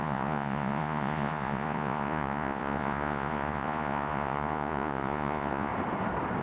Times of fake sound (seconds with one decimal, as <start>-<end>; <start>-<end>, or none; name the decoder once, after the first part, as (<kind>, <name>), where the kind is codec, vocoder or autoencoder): 0.0-5.7 (vocoder, Vocos)